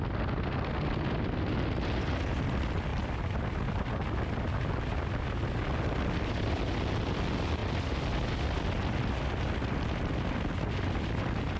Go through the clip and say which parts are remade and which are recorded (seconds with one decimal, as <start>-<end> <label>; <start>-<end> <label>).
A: 0.0-11.6 recorded

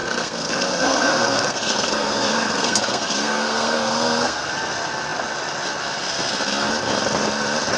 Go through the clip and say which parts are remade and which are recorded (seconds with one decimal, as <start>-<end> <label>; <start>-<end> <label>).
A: 0.0-4.5 remade; 4.5-7.8 recorded